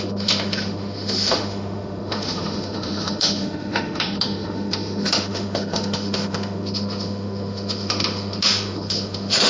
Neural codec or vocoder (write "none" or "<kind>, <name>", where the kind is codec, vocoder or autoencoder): autoencoder, DAC-VAE